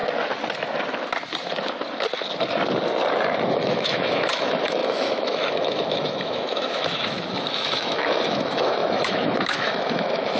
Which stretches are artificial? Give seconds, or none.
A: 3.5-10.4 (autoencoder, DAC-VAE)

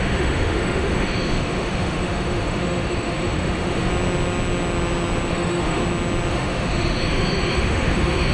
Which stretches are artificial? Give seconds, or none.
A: 0.0-3.9 (autoencoder, DAC-VAE); 5.3-5.8; 6.3-8.3

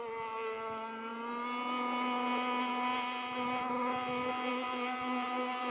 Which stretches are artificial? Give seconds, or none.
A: none

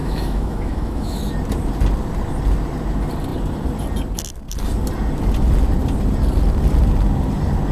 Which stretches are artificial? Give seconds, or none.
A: 0.0-1.2 (autoencoder, DAC-VAE)

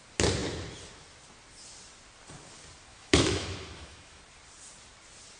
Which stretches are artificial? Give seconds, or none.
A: 2.9-4.2 (autoencoder, DAC-VAE)